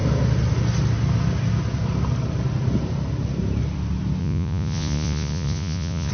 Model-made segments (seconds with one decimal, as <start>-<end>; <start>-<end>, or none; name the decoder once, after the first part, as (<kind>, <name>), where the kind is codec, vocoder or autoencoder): 4.2-6.1 (vocoder, Vocos)